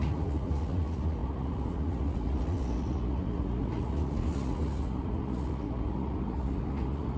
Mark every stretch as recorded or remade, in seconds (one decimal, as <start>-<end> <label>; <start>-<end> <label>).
0.0-7.2 remade